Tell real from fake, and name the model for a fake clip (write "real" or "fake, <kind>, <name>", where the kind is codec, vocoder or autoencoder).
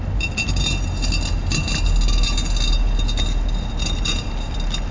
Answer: real